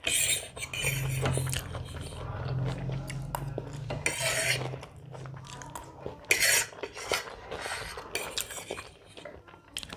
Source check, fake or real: real